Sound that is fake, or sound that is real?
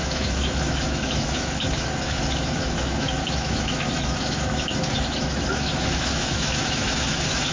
fake